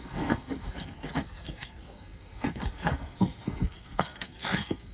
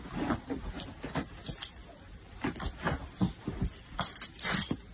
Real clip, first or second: second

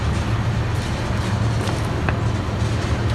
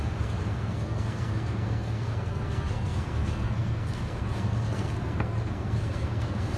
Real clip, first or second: first